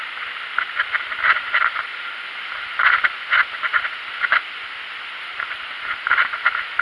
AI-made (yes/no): no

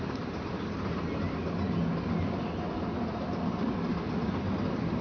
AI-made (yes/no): no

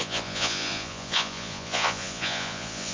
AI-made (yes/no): yes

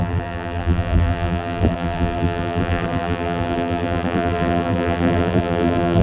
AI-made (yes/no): yes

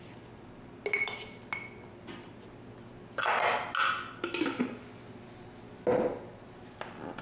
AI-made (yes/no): no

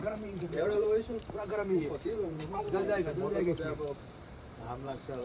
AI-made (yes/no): yes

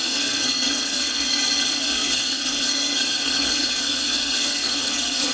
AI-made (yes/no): yes